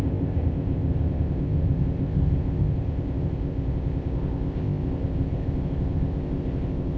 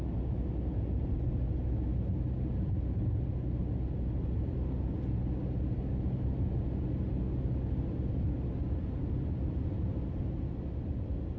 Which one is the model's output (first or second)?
first